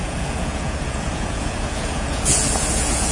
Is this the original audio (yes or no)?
no